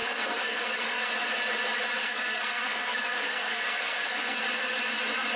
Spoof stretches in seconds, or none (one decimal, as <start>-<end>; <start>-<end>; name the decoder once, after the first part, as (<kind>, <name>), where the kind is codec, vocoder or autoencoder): 0.0-1.1 (codec, SNAC); 2.0-4.4